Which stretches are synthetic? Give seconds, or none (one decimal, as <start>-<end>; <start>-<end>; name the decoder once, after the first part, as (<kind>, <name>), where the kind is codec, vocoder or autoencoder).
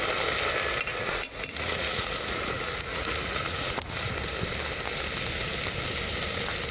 0.9-4.1 (vocoder, Vocos)